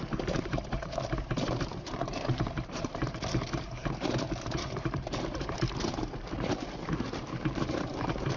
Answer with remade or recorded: remade